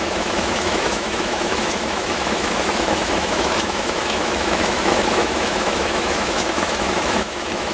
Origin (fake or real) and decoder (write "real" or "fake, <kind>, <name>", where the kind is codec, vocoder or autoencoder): fake, autoencoder, DAC-VAE